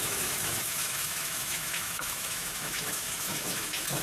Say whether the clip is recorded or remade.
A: remade